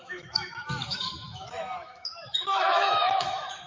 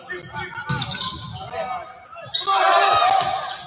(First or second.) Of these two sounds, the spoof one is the first